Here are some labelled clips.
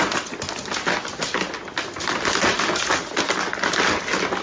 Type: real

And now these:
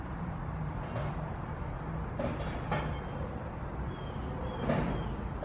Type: real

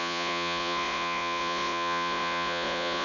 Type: fake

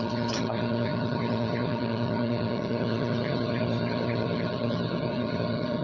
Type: fake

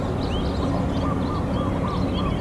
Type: real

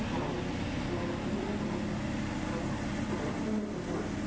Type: real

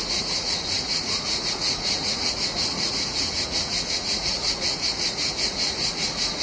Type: fake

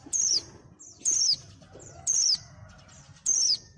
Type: real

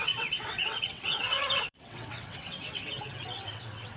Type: fake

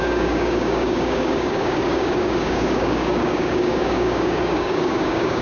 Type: fake